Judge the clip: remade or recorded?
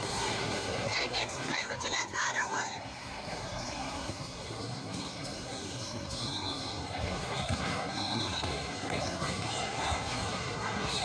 remade